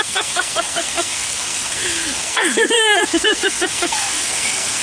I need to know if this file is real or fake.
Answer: fake